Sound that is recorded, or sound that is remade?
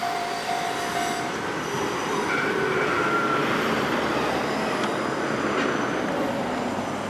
recorded